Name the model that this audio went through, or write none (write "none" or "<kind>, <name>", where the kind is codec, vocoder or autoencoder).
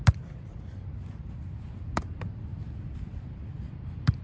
vocoder, BigVGAN v2